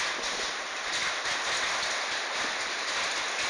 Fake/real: real